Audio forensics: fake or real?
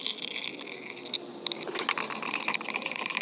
real